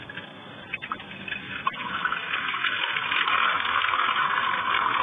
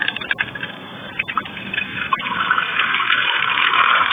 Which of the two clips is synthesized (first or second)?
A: second